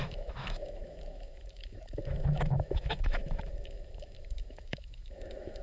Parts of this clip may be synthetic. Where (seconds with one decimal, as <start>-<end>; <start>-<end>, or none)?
0.0-5.6